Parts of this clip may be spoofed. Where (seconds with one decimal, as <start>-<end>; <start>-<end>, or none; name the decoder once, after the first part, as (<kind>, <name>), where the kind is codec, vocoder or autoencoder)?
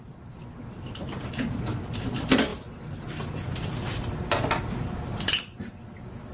none